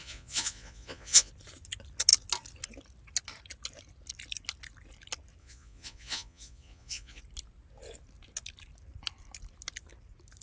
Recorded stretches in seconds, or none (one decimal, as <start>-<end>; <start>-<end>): 1.3-5.4; 7.2-10.4